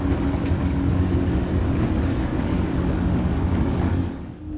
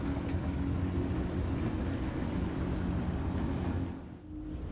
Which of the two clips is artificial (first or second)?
first